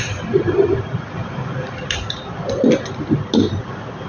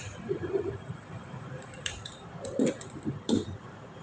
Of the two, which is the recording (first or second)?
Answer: first